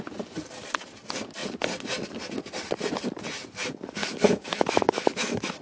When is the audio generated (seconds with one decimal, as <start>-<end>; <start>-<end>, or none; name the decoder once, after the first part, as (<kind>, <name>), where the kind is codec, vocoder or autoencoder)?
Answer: 4.0-5.6 (autoencoder, DAC-VAE)